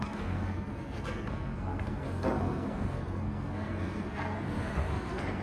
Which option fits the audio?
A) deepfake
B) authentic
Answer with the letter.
A